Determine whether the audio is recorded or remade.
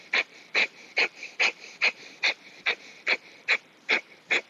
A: remade